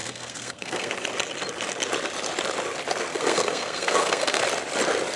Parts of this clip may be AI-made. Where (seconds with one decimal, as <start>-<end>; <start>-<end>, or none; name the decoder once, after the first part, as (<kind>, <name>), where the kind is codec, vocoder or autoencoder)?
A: 0.0-0.9 (codec, SNAC); 3.1-4.4